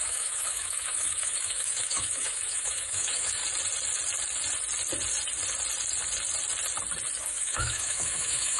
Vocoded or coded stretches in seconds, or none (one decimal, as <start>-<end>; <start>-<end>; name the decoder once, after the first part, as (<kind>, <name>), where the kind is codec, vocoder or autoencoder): 0.0-3.4 (autoencoder, DAC-VAE); 7.2-8.6